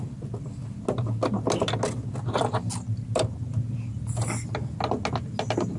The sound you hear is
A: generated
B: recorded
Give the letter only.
B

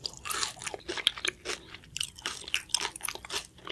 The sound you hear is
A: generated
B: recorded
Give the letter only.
B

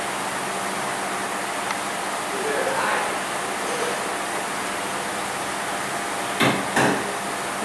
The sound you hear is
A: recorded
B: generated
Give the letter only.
A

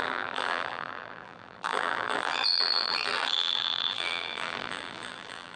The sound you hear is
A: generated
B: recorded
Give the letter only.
A